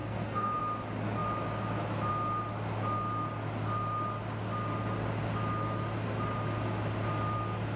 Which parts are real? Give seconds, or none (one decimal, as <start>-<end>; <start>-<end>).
0.6-7.8